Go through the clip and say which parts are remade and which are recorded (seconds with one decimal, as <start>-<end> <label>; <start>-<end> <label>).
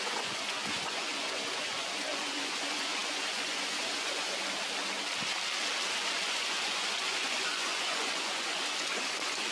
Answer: 0.0-4.4 remade; 4.4-5.9 recorded; 5.9-9.5 remade